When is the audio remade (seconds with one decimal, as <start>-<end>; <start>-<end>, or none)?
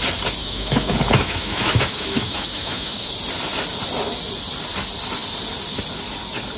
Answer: 0.4-3.1